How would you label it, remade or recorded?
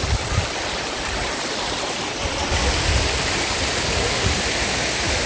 recorded